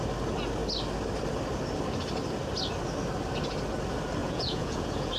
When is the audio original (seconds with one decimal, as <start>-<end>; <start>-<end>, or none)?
0.0-4.2